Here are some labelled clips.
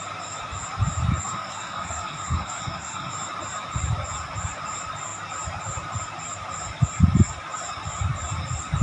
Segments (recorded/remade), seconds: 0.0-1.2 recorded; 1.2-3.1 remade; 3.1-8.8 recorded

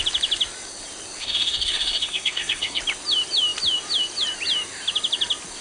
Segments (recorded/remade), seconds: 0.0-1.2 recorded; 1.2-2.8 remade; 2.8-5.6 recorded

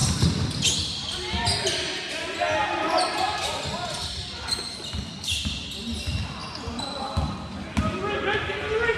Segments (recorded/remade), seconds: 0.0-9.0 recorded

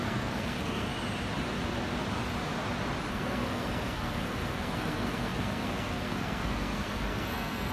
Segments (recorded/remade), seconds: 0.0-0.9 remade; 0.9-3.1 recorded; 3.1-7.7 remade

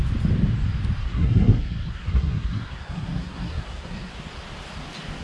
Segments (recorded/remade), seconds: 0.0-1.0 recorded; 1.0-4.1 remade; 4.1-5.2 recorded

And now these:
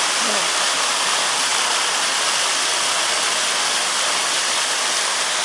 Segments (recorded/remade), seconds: 0.0-5.4 recorded

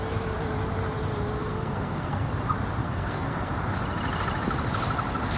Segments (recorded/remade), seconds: 0.0-1.4 recorded; 1.4-2.3 remade; 2.3-2.8 recorded; 2.8-3.5 remade; 3.5-5.4 recorded